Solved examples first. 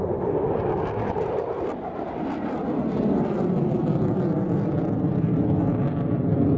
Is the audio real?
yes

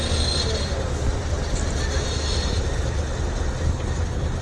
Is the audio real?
yes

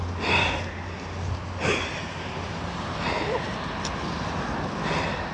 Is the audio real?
yes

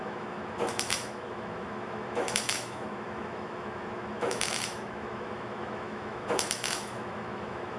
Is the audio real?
no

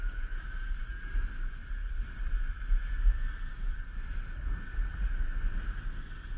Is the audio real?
yes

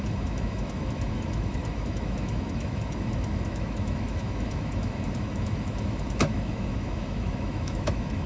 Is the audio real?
no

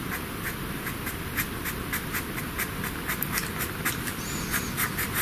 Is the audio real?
yes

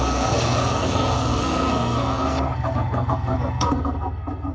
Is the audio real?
no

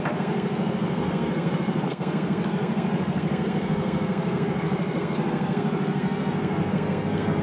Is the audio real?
no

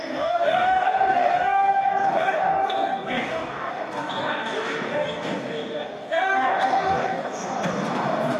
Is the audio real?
no